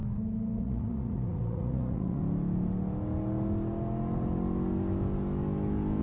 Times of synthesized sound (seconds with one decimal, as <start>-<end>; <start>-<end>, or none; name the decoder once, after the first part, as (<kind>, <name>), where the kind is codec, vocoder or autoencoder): 0.6-2.2 (vocoder, Vocos)